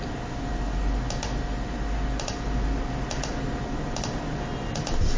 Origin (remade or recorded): recorded